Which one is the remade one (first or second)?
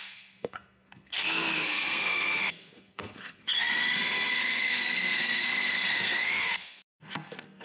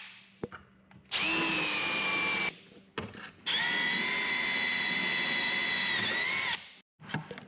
first